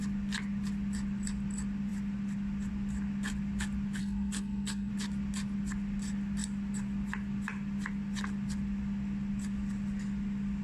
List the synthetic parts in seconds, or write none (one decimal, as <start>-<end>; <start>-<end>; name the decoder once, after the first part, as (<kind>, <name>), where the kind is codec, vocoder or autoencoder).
4.0-4.9 (codec, SNAC)